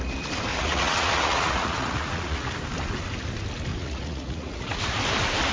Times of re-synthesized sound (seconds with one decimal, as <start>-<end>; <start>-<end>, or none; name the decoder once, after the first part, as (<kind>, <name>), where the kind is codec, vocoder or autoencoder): 0.5-2.5 (vocoder, Vocos); 3.7-4.8